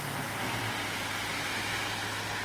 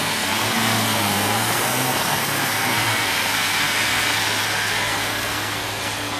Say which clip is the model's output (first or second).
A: second